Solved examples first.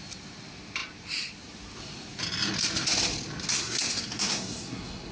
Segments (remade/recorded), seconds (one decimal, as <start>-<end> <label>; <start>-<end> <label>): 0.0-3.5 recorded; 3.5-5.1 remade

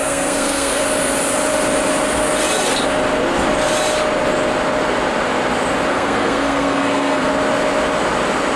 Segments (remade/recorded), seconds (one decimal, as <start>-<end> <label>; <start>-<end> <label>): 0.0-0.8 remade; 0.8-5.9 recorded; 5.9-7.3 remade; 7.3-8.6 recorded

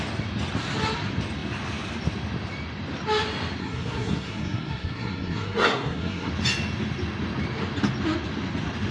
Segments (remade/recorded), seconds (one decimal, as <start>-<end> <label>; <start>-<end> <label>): 0.0-3.6 recorded; 3.6-6.3 remade; 6.3-8.9 recorded

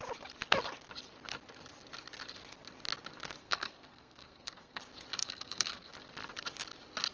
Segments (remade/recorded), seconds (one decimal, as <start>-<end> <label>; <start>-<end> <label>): 0.0-3.4 recorded; 3.4-4.8 remade; 4.8-5.2 recorded; 5.2-5.9 remade; 5.9-7.1 recorded

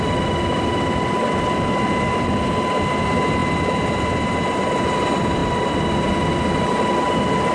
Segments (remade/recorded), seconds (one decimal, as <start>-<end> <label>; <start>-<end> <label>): 0.0-7.5 recorded

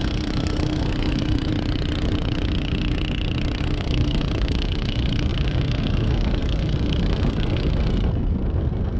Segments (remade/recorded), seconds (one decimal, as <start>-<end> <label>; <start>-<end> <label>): 0.0-1.5 remade; 1.5-3.6 recorded; 3.6-9.0 remade

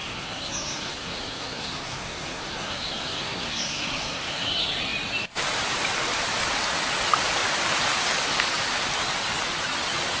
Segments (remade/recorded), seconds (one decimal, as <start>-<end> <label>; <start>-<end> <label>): 0.0-4.5 remade; 4.5-10.2 recorded